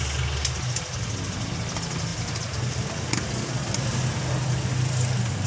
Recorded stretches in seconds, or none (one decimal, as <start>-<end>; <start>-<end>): 0.0-5.5